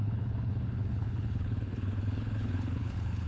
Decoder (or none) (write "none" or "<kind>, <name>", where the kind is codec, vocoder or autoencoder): codec, HILCodec